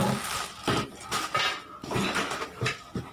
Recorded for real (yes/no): yes